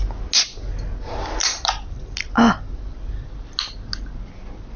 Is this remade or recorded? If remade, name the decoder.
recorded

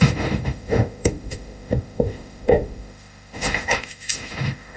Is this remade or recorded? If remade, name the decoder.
remade, autoencoder, DAC-VAE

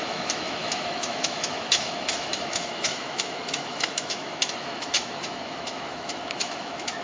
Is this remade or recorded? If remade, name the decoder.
remade, autoencoder, DAC-VAE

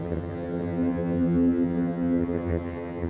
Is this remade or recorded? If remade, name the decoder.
remade, vocoder, HiFi-GAN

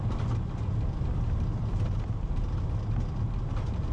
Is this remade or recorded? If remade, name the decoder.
recorded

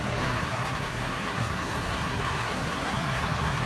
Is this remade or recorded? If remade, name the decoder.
remade, codec, SNAC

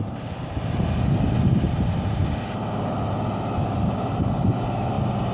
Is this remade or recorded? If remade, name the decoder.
recorded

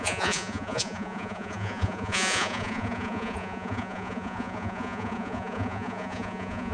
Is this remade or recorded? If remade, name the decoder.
remade, vocoder, Vocos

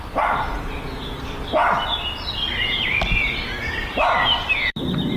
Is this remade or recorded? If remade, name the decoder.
remade, vocoder, BigVGAN v2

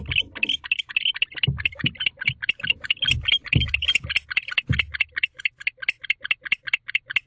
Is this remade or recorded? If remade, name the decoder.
recorded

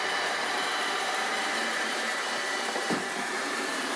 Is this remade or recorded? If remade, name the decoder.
remade, vocoder, BigVGAN v2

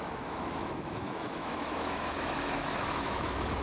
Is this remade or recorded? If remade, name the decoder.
remade, autoencoder, DAC-VAE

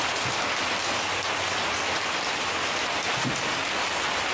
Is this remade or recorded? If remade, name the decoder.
recorded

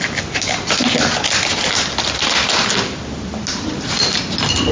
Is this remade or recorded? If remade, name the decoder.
recorded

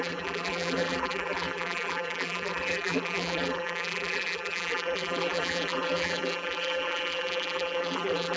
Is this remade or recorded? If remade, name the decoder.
remade, vocoder, BigVGAN v2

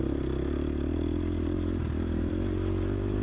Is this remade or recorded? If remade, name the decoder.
recorded